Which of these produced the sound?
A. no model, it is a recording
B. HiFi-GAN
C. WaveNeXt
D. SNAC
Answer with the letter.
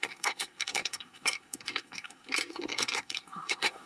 D